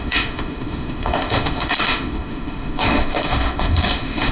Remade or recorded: remade